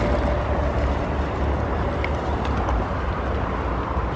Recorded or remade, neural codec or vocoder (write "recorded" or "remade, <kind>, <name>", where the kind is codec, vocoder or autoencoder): recorded